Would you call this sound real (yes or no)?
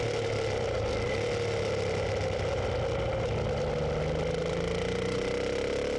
yes